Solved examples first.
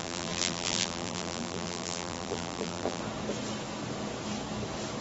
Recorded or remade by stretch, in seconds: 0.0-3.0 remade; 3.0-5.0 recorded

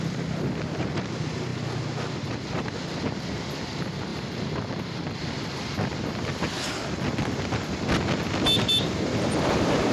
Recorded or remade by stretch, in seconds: 0.0-1.5 remade; 1.5-2.1 recorded; 2.1-4.1 remade; 4.1-8.2 recorded; 8.2-9.9 remade

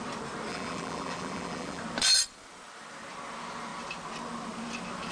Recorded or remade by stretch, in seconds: 0.0-0.5 recorded; 0.5-1.8 remade; 1.8-5.1 recorded

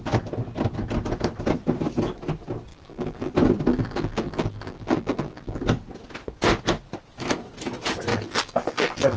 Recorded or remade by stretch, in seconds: 0.0-2.7 recorded; 2.7-3.3 remade; 3.3-3.7 recorded; 3.7-5.6 remade; 5.6-8.1 recorded; 8.1-9.2 remade